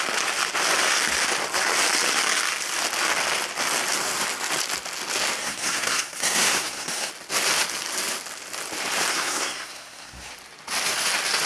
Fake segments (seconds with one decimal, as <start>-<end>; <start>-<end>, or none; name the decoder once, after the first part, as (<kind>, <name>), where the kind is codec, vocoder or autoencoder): 5.4-7.1 (codec, SNAC); 9.1-10.3